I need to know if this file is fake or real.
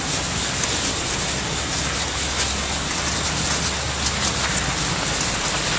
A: real